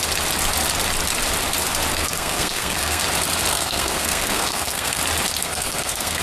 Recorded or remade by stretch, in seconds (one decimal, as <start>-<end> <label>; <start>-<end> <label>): 0.0-1.9 recorded; 1.9-3.0 remade; 3.0-3.5 recorded; 3.5-5.0 remade; 5.0-5.4 recorded; 5.4-6.2 remade